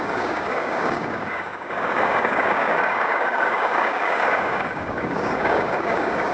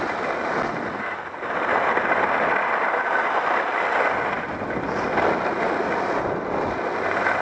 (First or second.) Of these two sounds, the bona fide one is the second